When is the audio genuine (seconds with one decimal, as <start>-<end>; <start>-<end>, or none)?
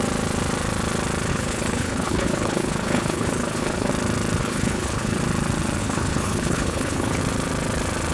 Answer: 0.0-1.3; 3.9-4.4; 5.2-5.8; 7.2-8.1